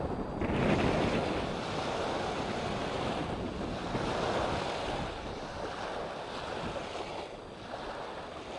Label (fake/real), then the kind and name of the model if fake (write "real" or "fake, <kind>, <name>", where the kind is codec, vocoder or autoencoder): real